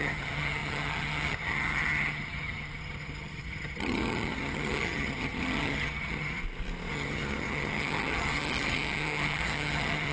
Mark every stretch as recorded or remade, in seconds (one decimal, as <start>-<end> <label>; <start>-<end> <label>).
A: 0.0-6.4 remade; 6.4-6.9 recorded; 6.9-10.1 remade